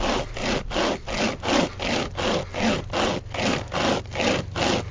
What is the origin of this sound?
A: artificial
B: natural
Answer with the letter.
B